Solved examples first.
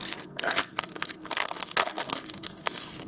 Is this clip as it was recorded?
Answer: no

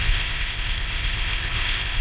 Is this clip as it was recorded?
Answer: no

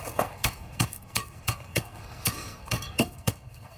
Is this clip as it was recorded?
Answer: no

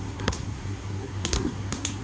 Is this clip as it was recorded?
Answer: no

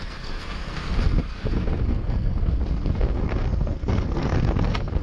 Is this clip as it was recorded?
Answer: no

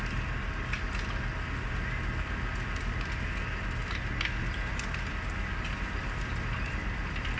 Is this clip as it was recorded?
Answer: yes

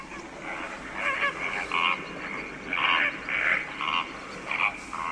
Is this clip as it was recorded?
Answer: yes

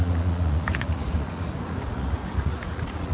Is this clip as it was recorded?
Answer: no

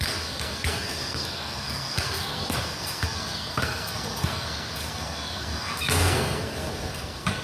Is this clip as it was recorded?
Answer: no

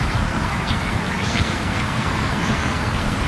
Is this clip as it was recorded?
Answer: no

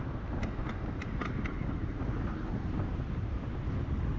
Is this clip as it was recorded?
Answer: yes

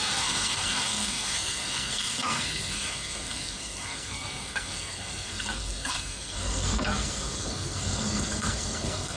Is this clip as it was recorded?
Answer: no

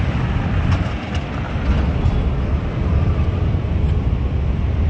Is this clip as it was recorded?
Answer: yes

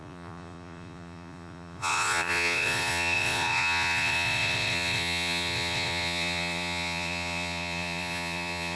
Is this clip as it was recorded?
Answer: no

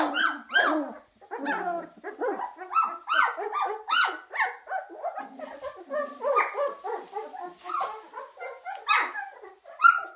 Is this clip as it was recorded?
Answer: yes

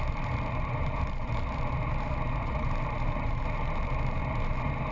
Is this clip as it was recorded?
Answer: no